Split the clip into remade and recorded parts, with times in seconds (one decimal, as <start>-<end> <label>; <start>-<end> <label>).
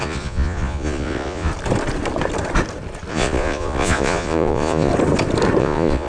0.0-1.5 remade; 1.5-3.1 recorded; 3.1-4.9 remade; 4.9-5.6 recorded; 5.6-6.1 remade